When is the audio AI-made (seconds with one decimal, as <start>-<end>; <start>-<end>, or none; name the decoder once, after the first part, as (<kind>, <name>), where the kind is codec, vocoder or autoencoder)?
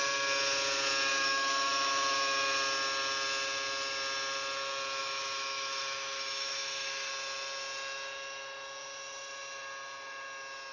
1.1-1.7 (autoencoder, DAC-VAE); 5.0-7.1